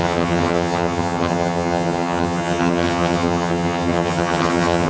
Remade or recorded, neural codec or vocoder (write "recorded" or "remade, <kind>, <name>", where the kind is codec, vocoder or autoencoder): remade, vocoder, HiFi-GAN